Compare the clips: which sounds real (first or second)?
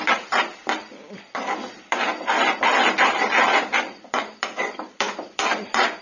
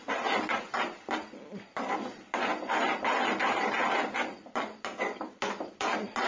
second